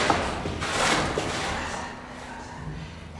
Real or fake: real